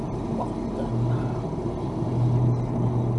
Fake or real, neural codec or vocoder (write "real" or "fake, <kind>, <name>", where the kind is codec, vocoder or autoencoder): real